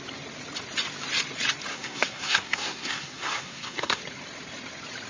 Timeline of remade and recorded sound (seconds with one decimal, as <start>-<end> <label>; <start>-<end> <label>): 0.0-1.7 recorded; 1.7-4.0 remade; 4.0-5.1 recorded

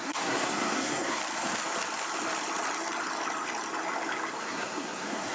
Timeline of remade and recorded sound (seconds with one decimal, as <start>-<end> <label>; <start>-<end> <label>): 0.0-1.2 remade; 1.2-4.4 recorded; 4.4-5.3 remade

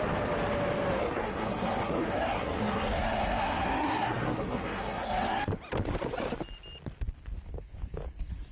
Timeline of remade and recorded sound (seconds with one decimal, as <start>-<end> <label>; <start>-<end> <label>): 0.0-1.0 recorded; 1.0-5.4 remade; 5.4-8.5 recorded

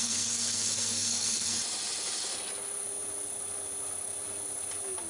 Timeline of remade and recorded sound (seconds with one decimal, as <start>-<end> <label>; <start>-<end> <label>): 0.0-1.6 remade; 1.6-5.1 recorded

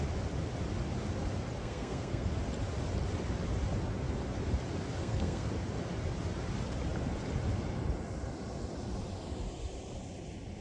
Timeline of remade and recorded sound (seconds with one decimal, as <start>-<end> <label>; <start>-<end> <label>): 0.0-1.6 recorded; 1.6-2.3 remade; 2.3-5.0 recorded; 5.0-5.5 remade; 5.5-10.6 recorded

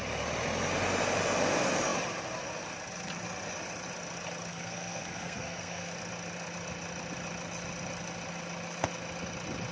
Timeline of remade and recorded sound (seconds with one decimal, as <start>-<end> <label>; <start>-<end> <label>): 0.0-4.5 recorded; 4.5-5.9 remade; 5.9-9.7 recorded

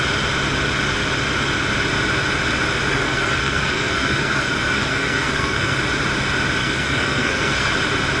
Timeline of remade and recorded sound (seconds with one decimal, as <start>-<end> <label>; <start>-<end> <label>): 0.0-2.9 recorded; 2.9-5.8 remade; 5.8-6.6 recorded; 6.6-7.7 remade; 7.7-8.2 recorded

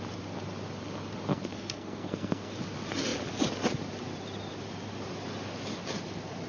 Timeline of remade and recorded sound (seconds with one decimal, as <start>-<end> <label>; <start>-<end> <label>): 0.0-1.3 recorded; 1.3-2.5 remade; 2.5-6.5 recorded